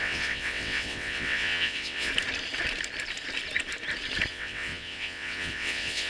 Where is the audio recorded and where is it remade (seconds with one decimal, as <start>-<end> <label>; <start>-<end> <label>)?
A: 0.0-2.1 remade; 2.1-4.3 recorded; 4.3-6.1 remade